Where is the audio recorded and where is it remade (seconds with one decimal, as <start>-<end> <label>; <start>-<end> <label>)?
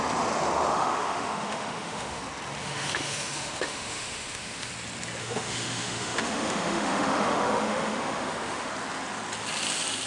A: 0.0-0.7 recorded; 0.7-2.2 remade; 2.2-2.6 recorded; 2.6-4.7 remade; 4.7-5.2 recorded; 5.2-8.7 remade; 8.7-10.1 recorded